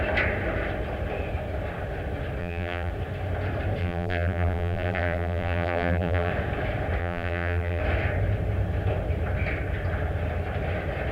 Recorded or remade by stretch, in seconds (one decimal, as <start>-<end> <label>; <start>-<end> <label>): 0.0-2.4 recorded; 2.4-2.9 remade; 2.9-3.8 recorded; 3.8-6.3 remade; 6.3-7.0 recorded; 7.0-7.8 remade; 7.8-11.1 recorded